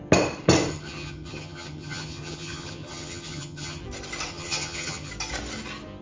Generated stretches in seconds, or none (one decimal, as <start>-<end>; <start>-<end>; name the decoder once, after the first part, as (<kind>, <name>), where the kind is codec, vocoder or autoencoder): 0.7-3.8 (vocoder, HiFi-GAN); 4.3-5.1